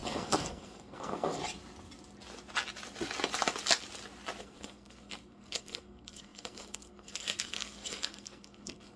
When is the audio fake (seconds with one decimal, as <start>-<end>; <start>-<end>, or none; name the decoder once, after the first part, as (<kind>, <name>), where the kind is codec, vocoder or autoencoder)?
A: 0.0-1.4 (codec, SNAC); 4.4-9.0